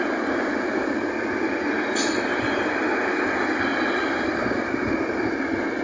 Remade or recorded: recorded